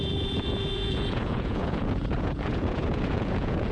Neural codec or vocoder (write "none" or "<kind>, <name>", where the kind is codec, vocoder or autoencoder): vocoder, Vocos